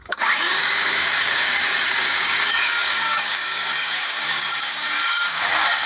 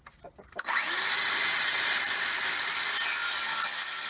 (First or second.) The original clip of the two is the second